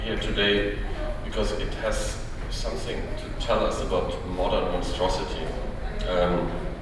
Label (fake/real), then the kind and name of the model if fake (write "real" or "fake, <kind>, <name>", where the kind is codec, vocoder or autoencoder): real